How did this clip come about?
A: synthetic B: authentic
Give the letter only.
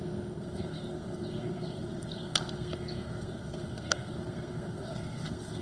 A